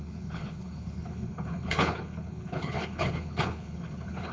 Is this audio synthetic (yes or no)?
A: yes